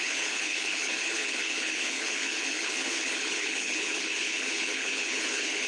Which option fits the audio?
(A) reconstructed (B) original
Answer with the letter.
A